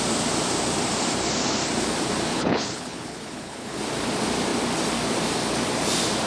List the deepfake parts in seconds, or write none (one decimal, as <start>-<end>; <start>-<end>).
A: 2.3-3.8